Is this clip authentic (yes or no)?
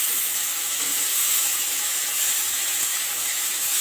no